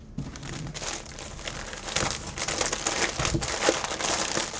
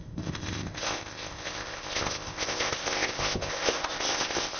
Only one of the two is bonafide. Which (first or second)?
first